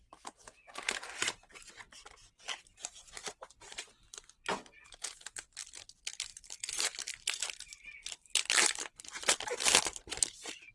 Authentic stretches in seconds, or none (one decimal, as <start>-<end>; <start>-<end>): 0.0-3.2; 3.9-6.3